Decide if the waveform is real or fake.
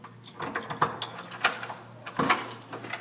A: real